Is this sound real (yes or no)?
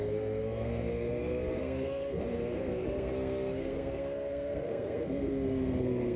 no